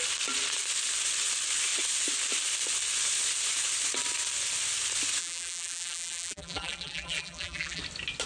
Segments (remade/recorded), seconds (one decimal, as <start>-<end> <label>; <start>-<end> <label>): 0.0-5.2 recorded; 5.2-7.8 remade; 7.8-8.3 recorded